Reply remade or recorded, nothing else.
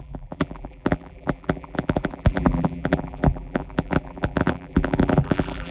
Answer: remade